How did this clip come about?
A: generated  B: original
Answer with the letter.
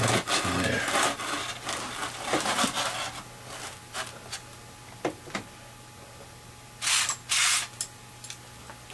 B